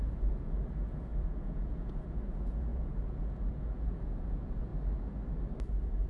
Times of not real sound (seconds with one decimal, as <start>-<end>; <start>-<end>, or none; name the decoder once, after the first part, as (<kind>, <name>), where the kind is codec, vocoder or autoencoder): 0.0-4.7 (vocoder, Vocos)